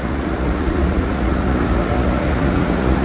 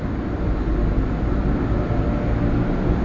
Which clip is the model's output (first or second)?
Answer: first